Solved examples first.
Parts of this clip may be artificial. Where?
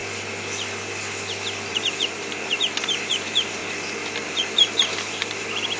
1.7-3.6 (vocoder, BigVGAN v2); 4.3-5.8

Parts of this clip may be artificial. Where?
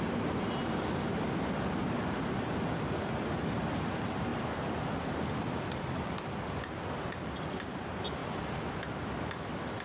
8.2-8.8 (vocoder, BigVGAN v2)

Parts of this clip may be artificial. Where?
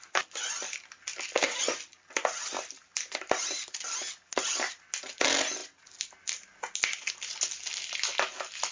none